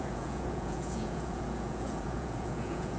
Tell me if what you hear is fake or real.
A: fake